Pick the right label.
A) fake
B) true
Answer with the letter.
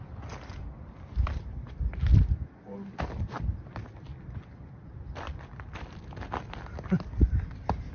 B